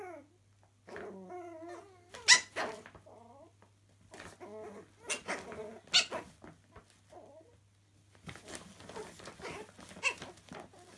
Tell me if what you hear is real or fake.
real